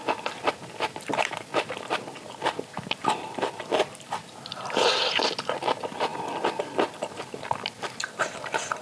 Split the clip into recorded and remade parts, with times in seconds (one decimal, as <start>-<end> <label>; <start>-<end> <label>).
0.0-8.8 recorded